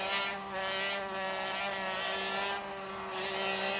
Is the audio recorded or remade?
recorded